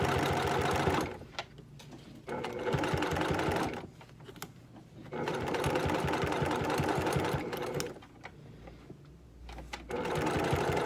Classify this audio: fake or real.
real